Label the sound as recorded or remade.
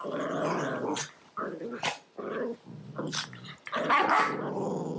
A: recorded